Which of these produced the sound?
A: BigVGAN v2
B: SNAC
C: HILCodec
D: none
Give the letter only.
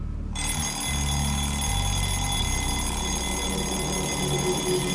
D